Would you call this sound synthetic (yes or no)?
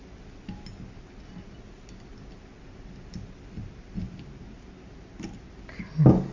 no